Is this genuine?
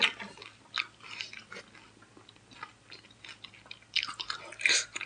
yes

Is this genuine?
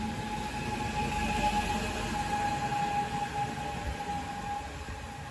yes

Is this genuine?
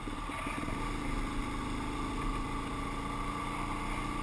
yes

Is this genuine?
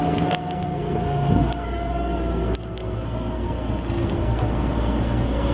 no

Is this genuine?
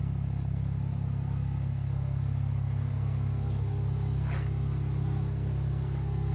no